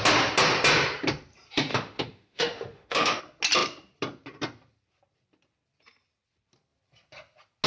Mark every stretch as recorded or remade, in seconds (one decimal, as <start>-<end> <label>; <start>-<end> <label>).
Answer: 0.0-1.7 recorded; 1.7-3.2 remade; 3.2-7.7 recorded